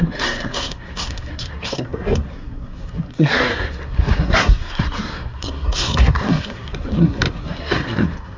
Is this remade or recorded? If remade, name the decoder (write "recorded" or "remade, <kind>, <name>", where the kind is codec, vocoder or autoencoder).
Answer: remade, codec, SNAC